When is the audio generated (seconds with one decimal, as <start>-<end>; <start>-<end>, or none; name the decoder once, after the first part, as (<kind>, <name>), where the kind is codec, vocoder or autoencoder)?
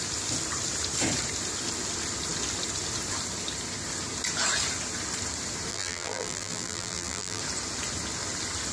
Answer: 5.7-7.4 (vocoder, BigVGAN v2)